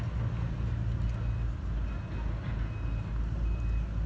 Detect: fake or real real